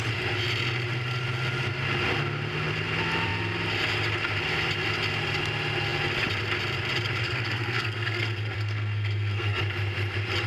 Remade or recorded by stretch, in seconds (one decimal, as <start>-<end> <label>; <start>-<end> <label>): 0.0-7.2 recorded; 7.2-9.6 remade; 9.6-10.5 recorded